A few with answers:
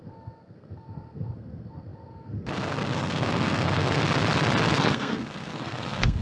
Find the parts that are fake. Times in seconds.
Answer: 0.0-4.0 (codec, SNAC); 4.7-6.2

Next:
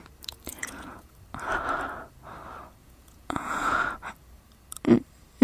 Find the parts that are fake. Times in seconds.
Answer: 0.5-1.1 (vocoder, Vocos); 2.8-3.8

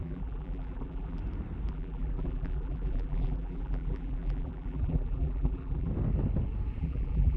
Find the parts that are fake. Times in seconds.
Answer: 0.0-1.2 (vocoder, BigVGAN v2); 1.7-5.9; 6.8-7.4

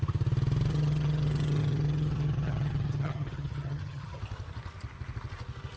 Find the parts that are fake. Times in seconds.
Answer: 0.7-4.2 (vocoder, HiFi-GAN)

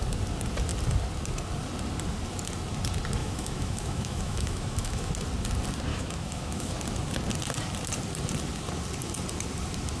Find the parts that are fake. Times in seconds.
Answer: 3.2-5.1 (autoencoder, DAC-VAE); 5.9-6.7